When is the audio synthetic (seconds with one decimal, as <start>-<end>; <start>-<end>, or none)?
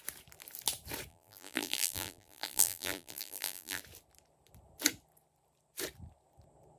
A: 1.1-3.8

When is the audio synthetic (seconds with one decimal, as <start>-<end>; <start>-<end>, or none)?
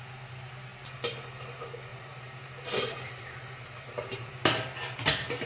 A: 1.9-4.3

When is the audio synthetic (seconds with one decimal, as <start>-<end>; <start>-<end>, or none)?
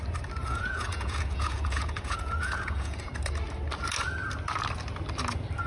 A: 0.4-3.1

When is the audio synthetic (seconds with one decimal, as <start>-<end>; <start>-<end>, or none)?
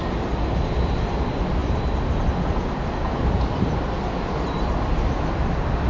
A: none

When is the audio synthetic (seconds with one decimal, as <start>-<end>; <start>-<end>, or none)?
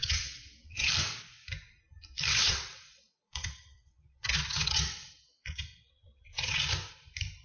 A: 0.0-0.9; 2.3-6.7